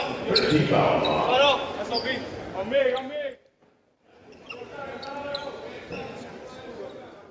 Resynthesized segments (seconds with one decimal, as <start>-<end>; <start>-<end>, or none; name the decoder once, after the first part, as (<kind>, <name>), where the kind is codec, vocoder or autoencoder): 4.2-4.8 (vocoder, BigVGAN v2)